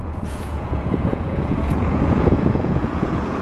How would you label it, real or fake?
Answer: fake